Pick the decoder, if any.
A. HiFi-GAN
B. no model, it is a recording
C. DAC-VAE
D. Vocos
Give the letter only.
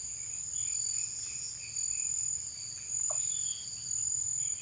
B